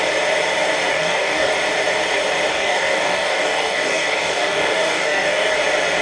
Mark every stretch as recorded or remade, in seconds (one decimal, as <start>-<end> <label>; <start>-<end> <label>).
0.0-0.9 recorded; 0.9-1.5 remade; 1.5-2.5 recorded; 2.5-5.5 remade; 5.5-6.0 recorded